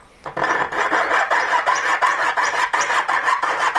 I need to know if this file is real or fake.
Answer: real